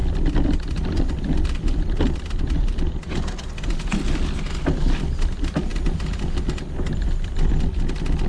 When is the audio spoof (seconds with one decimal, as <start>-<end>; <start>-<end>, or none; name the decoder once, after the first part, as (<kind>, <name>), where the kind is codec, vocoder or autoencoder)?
none